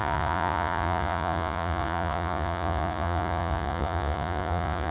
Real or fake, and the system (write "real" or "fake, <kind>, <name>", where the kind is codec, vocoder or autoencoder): fake, vocoder, Vocos